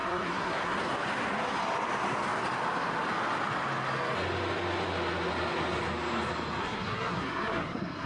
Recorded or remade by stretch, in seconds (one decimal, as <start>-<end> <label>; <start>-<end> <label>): 0.0-0.8 remade; 0.8-6.6 recorded; 6.6-8.1 remade